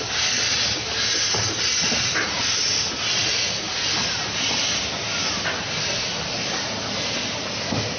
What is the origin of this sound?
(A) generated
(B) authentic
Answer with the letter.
B